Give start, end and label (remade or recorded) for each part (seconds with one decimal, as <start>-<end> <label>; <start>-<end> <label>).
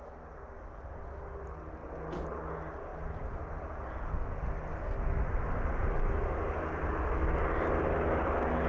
0.0-8.7 recorded